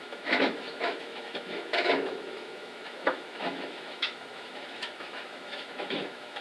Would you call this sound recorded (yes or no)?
no